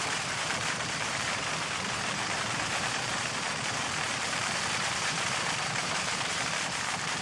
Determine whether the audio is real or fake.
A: fake